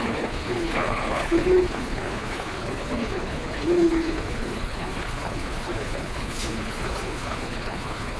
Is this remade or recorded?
remade